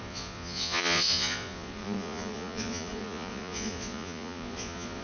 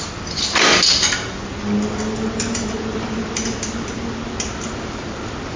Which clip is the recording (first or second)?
second